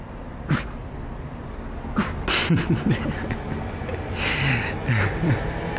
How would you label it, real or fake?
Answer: real